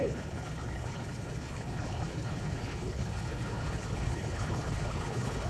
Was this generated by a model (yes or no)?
yes